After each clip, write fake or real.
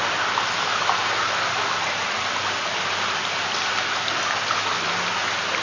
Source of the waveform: real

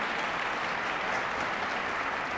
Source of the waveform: real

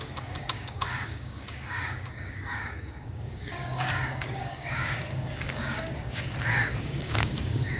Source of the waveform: fake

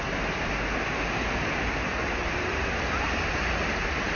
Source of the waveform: real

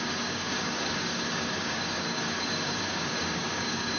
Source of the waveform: fake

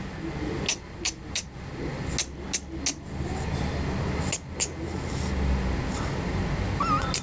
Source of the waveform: real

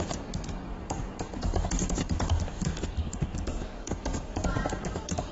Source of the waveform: fake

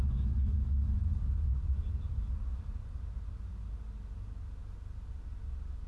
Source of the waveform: real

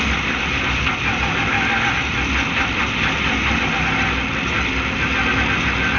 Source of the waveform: real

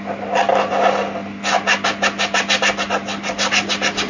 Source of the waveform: real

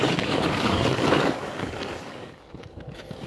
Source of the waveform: fake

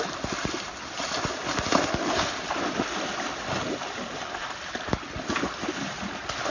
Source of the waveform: real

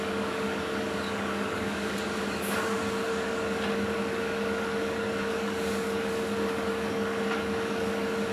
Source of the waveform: fake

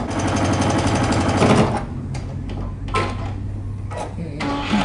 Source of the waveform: real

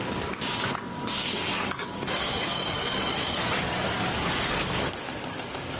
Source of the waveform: fake